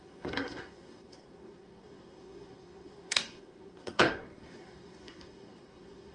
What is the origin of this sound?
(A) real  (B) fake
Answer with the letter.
B